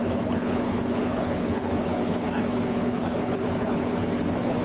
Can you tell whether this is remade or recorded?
remade